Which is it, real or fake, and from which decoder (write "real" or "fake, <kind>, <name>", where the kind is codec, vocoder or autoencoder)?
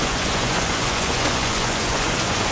fake, vocoder, Vocos